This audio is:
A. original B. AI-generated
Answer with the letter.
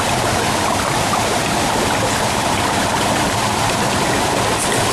A